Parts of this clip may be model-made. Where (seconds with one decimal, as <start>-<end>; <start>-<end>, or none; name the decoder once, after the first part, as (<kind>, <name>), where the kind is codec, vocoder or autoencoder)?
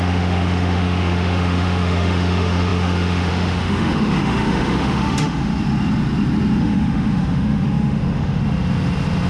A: 0.0-5.5 (autoencoder, DAC-VAE); 6.6-8.4